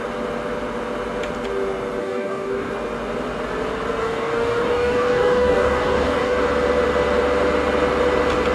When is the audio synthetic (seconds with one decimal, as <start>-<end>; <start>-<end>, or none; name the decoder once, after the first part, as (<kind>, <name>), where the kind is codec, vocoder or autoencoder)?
2.0-2.7 (codec, DAC); 4.0-6.4